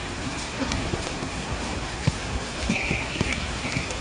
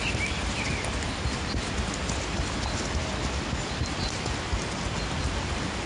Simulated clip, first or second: first